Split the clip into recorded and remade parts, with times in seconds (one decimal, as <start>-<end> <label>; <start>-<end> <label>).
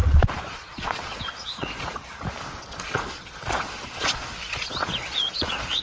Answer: 0.0-2.0 remade; 2.0-2.6 recorded; 2.6-5.8 remade